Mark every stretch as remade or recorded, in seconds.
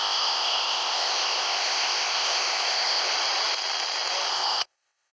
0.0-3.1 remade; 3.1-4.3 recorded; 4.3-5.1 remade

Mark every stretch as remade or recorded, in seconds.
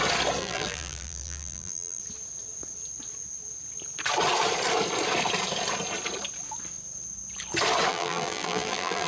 0.0-0.4 recorded; 0.4-2.0 remade; 2.0-7.9 recorded; 7.9-9.1 remade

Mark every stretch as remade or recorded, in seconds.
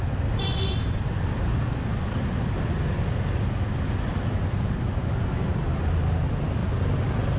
0.0-7.4 recorded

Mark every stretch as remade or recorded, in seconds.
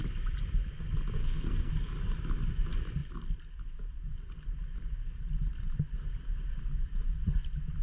0.0-1.2 recorded; 1.2-1.7 remade; 1.7-7.8 recorded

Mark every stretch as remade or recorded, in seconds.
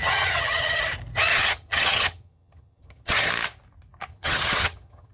0.0-0.8 remade; 0.8-1.3 recorded; 1.3-3.3 remade; 3.3-4.1 recorded; 4.1-5.1 remade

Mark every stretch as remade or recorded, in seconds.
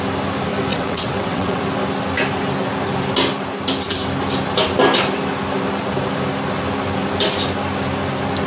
0.0-0.7 recorded; 0.7-1.6 remade; 1.6-8.5 recorded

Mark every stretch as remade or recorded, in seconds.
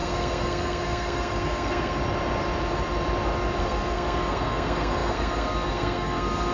0.0-2.0 remade; 2.0-3.6 recorded; 3.6-6.5 remade